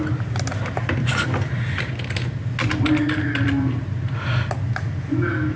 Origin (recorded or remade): recorded